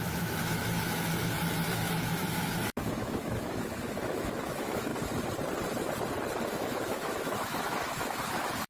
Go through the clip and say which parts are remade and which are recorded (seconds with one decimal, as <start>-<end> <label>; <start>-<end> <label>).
0.0-4.9 remade; 4.9-6.5 recorded; 6.5-8.7 remade